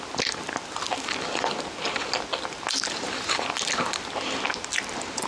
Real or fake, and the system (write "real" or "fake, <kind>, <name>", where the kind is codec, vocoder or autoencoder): real